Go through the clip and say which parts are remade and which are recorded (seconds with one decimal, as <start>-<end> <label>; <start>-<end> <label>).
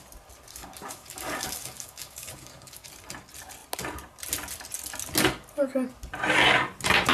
0.0-0.5 recorded; 0.5-2.9 remade; 2.9-7.1 recorded